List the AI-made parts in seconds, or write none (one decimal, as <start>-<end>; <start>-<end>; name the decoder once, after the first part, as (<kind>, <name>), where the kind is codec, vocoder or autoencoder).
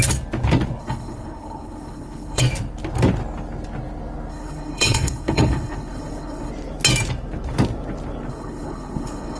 0.8-2.4 (codec, HILCodec); 4.3-6.5; 8.3-9.4